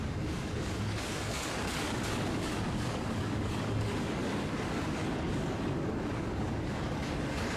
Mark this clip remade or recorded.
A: remade